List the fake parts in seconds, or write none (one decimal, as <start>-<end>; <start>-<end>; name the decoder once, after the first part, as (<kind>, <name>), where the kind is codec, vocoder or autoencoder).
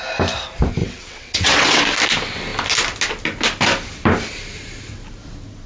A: 0.8-1.8 (vocoder, WaveNeXt)